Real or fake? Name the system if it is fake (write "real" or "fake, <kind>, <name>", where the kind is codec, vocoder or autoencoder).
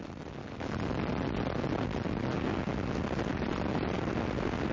real